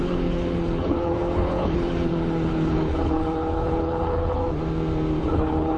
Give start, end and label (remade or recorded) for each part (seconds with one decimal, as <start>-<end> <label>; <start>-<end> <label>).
0.0-4.4 remade; 4.4-5.2 recorded; 5.2-5.8 remade